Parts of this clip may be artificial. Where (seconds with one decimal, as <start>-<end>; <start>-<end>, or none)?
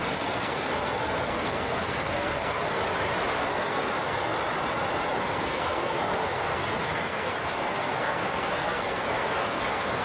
0.0-2.8; 3.4-4.3; 5.1-10.0